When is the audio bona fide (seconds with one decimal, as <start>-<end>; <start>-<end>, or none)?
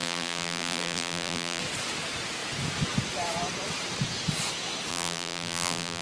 1.6-4.9